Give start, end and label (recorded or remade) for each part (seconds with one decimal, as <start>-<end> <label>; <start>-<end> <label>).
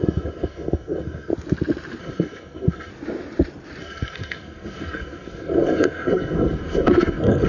0.0-1.3 remade; 1.3-2.0 recorded; 2.0-2.9 remade; 2.9-3.8 recorded; 3.8-7.5 remade